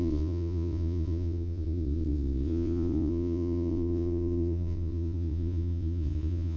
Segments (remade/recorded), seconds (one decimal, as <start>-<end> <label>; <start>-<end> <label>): 0.0-6.6 remade